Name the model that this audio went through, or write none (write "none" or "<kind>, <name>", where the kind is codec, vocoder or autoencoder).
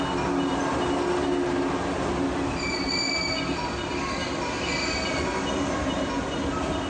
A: none